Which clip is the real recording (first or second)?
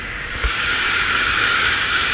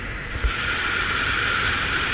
second